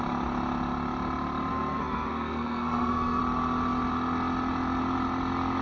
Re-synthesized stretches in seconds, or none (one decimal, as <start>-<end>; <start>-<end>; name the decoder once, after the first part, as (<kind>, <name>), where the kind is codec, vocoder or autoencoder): 1.5-3.2 (codec, SNAC)